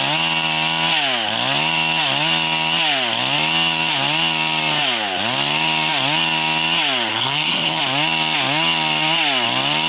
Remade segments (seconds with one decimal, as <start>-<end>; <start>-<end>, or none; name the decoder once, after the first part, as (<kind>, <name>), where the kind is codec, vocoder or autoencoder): 7.1-7.8 (codec, SNAC)